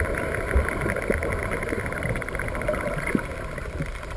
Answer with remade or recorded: recorded